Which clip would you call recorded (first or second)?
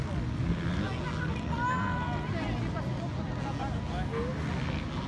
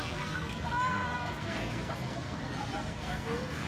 first